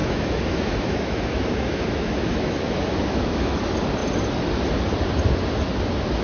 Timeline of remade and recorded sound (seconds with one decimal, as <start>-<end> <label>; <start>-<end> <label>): 0.0-3.6 remade; 3.6-6.2 recorded